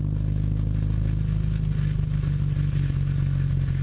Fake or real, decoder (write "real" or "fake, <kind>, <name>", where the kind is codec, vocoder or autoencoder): real